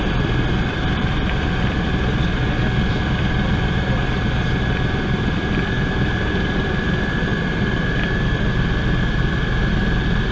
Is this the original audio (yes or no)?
no